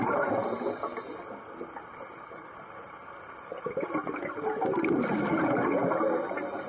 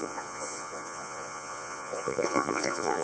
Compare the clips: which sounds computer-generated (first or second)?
second